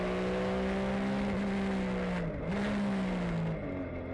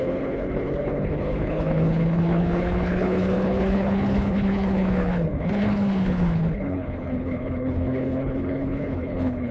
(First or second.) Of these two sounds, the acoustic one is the first